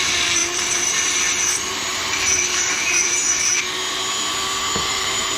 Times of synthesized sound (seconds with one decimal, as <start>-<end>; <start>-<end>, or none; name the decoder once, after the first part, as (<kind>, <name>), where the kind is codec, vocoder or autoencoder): 0.0-3.5 (vocoder, BigVGAN v2); 4.9-5.4